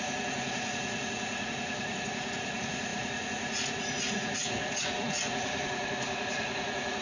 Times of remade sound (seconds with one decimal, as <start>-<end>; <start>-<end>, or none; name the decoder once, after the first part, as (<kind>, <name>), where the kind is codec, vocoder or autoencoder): 0.0-7.0 (vocoder, Vocos)